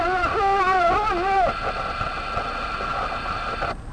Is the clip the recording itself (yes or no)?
yes